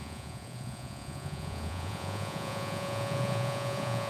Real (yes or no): no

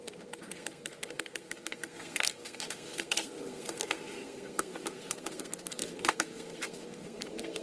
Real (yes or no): no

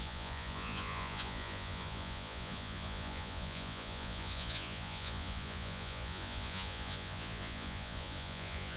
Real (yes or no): no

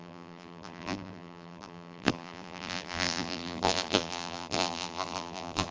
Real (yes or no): no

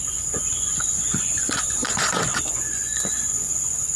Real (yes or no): no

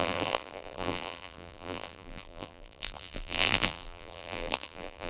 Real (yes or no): no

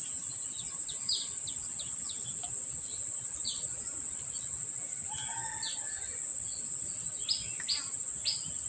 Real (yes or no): yes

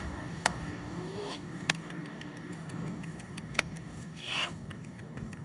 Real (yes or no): no